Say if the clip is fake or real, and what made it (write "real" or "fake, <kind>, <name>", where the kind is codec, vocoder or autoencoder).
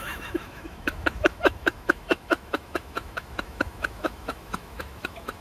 fake, autoencoder, DAC-VAE